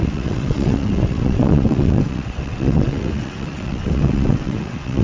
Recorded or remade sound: remade